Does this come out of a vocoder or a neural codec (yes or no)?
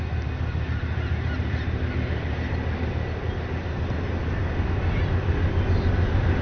no